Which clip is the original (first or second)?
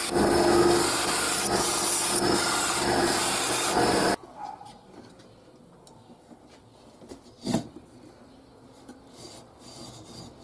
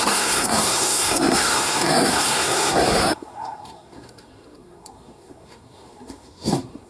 first